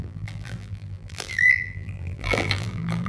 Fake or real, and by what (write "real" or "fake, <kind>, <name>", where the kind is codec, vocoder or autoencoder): fake, vocoder, BigVGAN v2